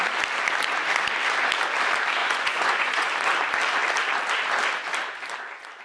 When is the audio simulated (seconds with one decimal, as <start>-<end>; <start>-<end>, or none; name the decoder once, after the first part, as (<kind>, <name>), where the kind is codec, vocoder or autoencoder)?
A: 2.2-3.1 (vocoder, Vocos)